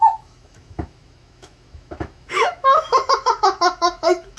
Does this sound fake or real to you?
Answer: fake